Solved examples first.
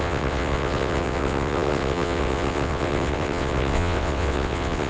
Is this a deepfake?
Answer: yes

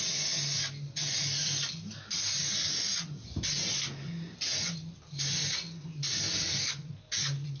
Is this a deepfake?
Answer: no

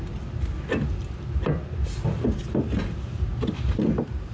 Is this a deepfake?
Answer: no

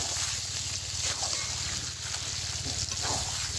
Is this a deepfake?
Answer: no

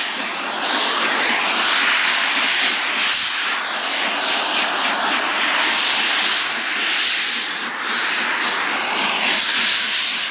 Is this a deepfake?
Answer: no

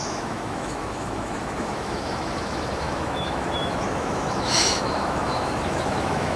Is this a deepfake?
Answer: yes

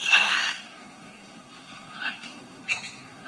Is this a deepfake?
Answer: yes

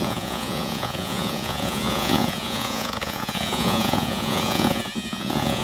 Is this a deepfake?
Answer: yes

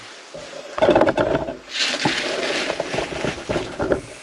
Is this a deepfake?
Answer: no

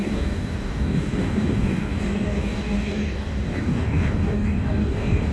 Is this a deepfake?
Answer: yes